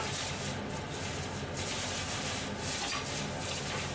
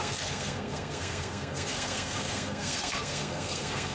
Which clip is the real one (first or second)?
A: first